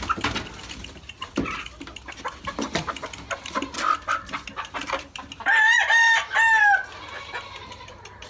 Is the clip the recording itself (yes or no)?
yes